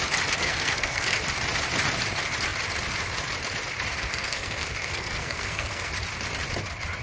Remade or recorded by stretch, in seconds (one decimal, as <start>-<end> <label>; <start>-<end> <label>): 0.0-0.4 recorded; 0.4-1.2 remade; 1.2-3.9 recorded; 3.9-5.9 remade; 5.9-7.0 recorded